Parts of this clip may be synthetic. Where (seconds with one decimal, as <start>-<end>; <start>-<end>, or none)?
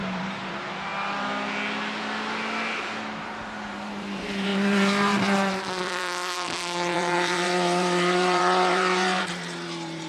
0.0-0.9; 3.2-10.1